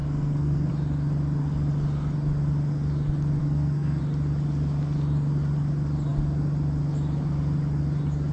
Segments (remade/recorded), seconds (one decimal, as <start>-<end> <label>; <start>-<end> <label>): 0.0-0.7 remade; 0.7-3.4 recorded; 3.4-4.0 remade; 4.0-8.3 recorded